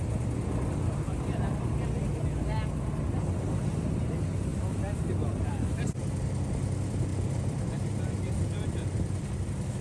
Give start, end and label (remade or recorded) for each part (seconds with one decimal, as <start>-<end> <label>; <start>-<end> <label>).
0.0-4.5 recorded; 4.5-6.0 remade; 6.0-7.1 recorded; 7.1-9.8 remade